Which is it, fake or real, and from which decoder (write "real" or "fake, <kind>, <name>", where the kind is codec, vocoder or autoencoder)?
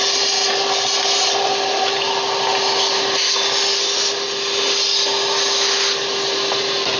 real